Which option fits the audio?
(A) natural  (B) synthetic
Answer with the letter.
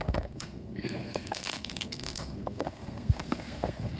B